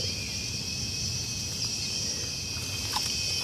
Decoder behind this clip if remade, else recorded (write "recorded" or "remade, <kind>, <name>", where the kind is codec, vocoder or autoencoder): recorded